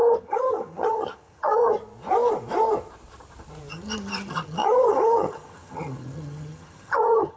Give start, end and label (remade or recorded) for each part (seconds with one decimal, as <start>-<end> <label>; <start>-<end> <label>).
0.0-1.7 remade; 1.7-3.7 recorded; 3.7-7.4 remade